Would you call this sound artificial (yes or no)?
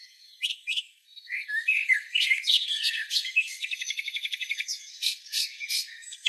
yes